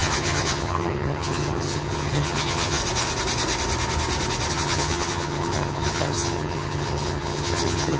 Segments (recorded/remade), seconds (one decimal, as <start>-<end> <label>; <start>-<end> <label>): 0.0-2.8 remade; 2.8-4.5 recorded; 4.5-8.0 remade